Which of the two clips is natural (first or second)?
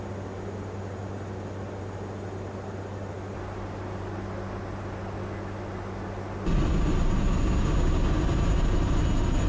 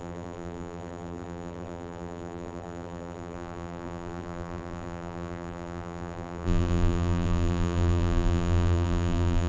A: first